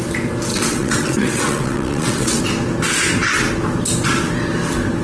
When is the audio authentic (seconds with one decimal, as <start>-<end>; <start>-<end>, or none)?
0.0-0.5; 2.4-5.0